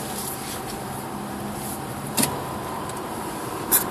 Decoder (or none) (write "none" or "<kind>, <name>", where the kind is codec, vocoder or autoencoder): vocoder, BigVGAN v2